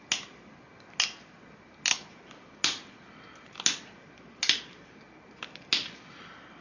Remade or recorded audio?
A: recorded